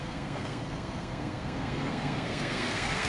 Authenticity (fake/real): fake